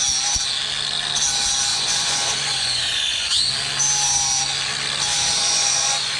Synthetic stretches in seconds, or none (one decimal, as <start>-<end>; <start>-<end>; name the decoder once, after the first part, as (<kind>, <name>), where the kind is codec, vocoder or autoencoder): 1.7-3.5 (vocoder, Vocos); 5.1-6.2